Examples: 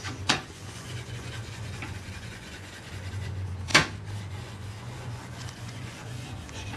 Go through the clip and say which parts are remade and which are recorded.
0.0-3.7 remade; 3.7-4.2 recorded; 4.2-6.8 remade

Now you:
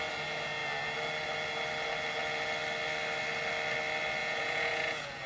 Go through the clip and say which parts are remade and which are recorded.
0.0-4.2 recorded; 4.2-5.3 remade